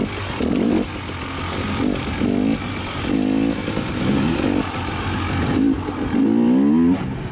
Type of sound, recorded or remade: recorded